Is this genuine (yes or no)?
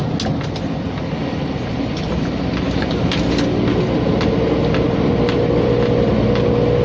yes